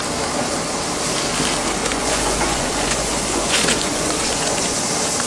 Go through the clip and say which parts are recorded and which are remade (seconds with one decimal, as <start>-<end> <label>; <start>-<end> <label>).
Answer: 0.0-1.8 recorded; 1.8-4.8 remade; 4.8-5.3 recorded